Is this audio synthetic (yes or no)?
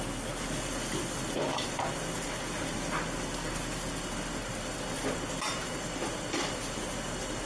no